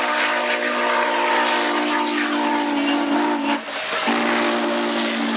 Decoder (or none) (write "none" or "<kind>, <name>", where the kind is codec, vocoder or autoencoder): none